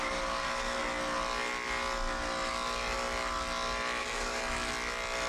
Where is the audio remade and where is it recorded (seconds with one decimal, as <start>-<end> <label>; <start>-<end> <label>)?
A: 0.0-0.8 remade; 0.8-4.0 recorded; 4.0-4.4 remade; 4.4-5.3 recorded